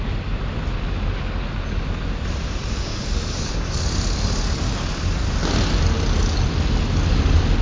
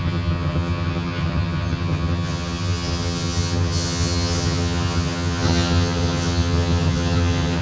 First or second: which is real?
first